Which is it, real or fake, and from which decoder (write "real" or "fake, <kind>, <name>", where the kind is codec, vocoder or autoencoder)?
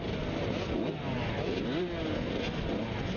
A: real